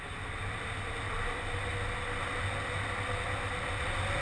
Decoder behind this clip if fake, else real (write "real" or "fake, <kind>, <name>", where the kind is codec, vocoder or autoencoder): real